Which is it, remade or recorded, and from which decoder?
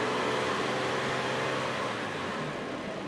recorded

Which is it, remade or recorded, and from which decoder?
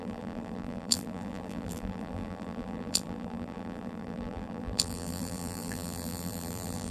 remade, vocoder, BigVGAN v2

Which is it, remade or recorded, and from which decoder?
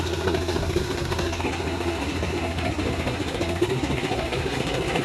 remade, codec, SNAC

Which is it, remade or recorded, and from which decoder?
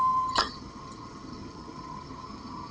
remade, vocoder, HiFi-GAN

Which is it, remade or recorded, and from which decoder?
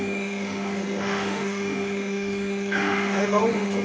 remade, autoencoder, DAC-VAE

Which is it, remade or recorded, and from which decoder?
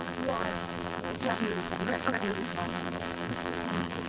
remade, vocoder, BigVGAN v2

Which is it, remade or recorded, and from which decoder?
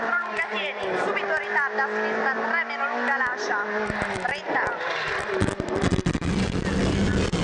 recorded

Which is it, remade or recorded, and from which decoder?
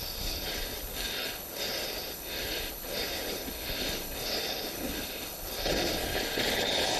remade, codec, HILCodec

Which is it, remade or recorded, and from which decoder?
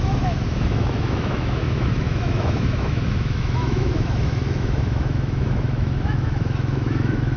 remade, autoencoder, DAC-VAE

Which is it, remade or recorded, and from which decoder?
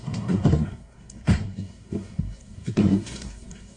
remade, codec, SNAC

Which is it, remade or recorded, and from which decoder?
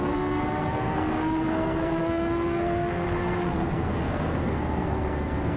remade, codec, SNAC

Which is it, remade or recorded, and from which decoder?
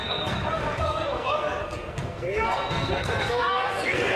remade, codec, SNAC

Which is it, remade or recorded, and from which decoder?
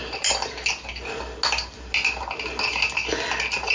recorded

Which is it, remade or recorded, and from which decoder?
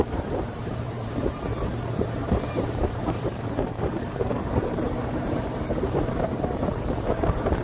remade, vocoder, BigVGAN v2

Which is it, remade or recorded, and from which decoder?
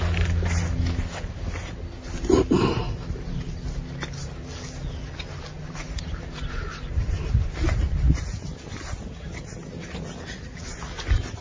recorded